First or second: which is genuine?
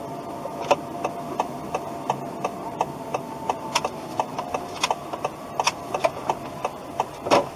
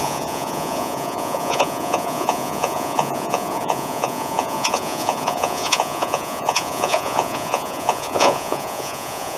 first